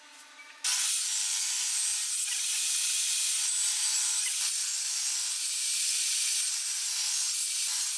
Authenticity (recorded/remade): recorded